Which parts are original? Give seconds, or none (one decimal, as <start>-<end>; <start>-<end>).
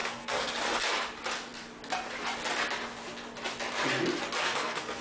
0.5-4.4